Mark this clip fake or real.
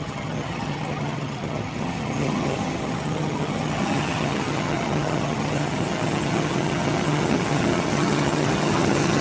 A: fake